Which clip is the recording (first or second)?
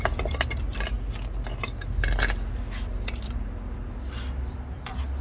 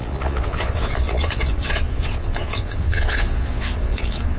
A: first